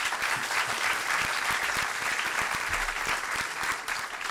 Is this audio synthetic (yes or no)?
no